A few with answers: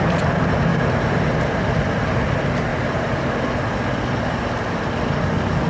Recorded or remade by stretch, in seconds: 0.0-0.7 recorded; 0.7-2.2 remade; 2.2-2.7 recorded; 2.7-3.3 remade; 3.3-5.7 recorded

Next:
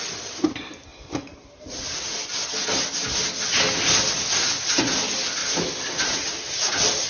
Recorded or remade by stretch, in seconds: 0.0-5.4 recorded; 5.4-6.6 remade; 6.6-7.1 recorded

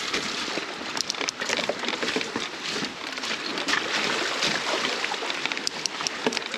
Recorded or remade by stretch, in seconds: 0.0-0.9 recorded; 0.9-2.1 remade; 2.1-3.5 recorded; 3.5-5.5 remade; 5.5-6.6 recorded

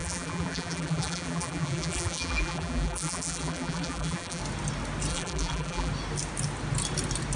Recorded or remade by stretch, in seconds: 0.0-4.4 remade; 4.4-5.1 recorded; 5.1-5.9 remade; 5.9-7.4 recorded

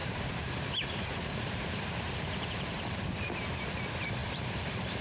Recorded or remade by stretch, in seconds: 0.0-3.0 remade; 3.0-4.2 recorded; 4.2-5.0 remade